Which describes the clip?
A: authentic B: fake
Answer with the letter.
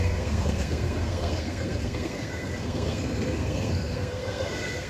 B